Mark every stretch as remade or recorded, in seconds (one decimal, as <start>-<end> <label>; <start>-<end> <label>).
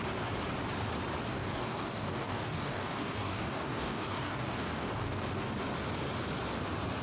0.0-1.3 recorded; 1.3-5.5 remade; 5.5-7.0 recorded